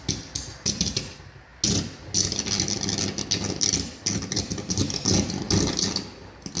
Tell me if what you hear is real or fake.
real